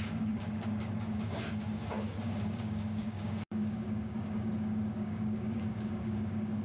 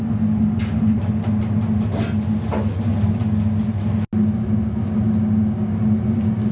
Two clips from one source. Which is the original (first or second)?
second